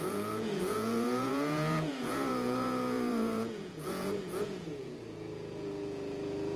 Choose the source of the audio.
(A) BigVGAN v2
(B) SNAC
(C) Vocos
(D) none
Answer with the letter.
C